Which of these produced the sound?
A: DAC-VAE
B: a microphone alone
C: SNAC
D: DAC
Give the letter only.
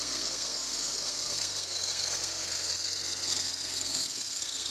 C